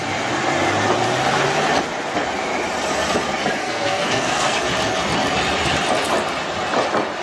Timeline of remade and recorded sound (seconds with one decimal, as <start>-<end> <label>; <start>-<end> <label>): 0.0-3.6 recorded; 3.6-4.6 remade; 4.6-7.2 recorded